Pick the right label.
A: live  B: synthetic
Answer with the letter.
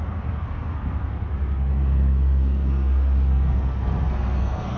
B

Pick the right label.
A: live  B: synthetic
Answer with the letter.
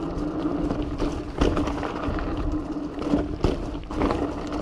A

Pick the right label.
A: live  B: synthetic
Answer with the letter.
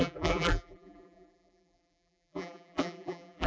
B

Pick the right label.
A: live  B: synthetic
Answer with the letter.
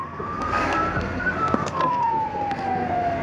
B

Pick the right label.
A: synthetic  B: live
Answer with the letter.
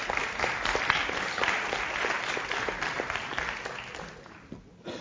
B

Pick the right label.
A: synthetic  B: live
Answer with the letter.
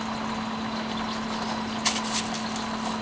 B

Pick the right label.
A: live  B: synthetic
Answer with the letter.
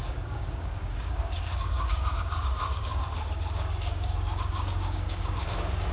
B